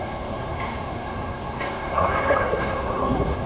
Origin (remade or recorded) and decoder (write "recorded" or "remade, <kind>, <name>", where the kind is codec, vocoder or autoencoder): remade, codec, SNAC